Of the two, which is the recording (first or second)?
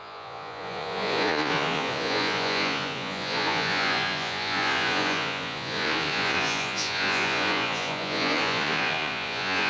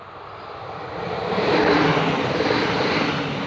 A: second